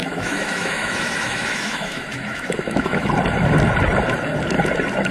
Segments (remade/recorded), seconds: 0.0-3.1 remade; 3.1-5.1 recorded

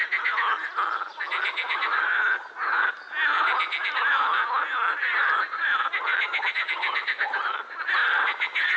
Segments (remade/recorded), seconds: 0.0-8.8 recorded

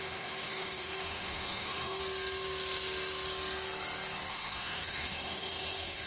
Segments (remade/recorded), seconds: 0.0-2.0 remade; 2.0-4.3 recorded; 4.3-6.1 remade

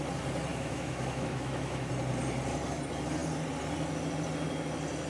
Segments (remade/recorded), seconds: 0.0-0.5 recorded; 0.5-1.9 remade; 1.9-5.1 recorded

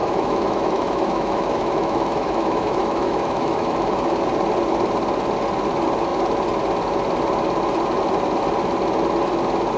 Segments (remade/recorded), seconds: 0.0-4.2 remade; 4.2-9.8 recorded

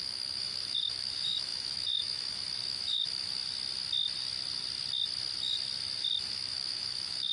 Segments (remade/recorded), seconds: 0.0-3.4 remade; 3.4-6.2 recorded; 6.2-7.3 remade